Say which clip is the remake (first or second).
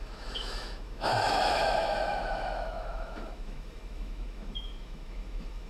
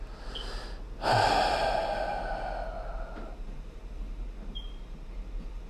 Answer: first